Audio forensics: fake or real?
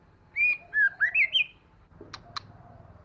real